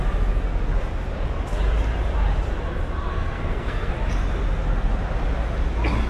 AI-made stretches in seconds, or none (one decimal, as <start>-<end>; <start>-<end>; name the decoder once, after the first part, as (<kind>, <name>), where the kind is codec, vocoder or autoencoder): 3.1-3.9 (codec, SNAC)

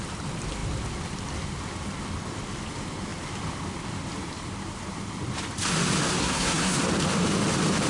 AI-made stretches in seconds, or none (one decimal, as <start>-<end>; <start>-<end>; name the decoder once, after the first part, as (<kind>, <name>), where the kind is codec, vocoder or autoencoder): 6.2-6.8 (codec, SNAC)

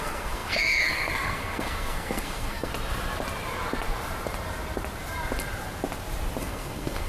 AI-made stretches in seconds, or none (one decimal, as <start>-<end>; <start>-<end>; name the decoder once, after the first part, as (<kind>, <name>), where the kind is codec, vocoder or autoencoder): 0.0-2.7 (codec, SNAC); 6.4-7.1